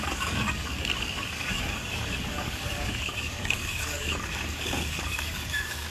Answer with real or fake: fake